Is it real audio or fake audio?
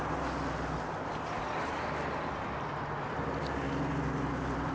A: real